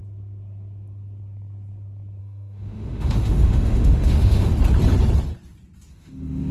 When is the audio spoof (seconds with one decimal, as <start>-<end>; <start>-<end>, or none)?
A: 2.2-4.5; 5.9-6.5